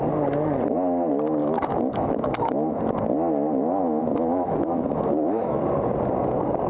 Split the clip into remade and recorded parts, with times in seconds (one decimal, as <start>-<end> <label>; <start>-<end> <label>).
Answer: 0.0-1.4 recorded; 1.4-2.8 remade; 2.8-3.8 recorded; 3.8-5.6 remade; 5.6-6.7 recorded